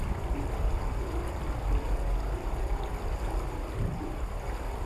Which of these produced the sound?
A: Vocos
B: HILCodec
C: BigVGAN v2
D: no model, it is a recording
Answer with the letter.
C